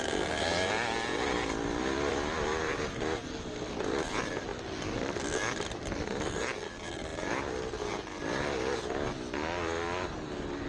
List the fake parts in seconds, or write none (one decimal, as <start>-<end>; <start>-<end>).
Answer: none